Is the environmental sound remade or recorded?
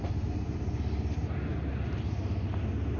recorded